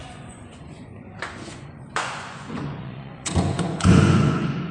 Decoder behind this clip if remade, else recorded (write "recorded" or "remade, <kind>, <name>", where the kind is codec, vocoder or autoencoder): remade, vocoder, Vocos